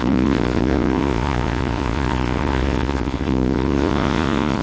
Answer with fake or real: fake